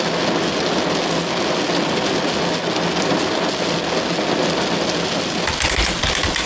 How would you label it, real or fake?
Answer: real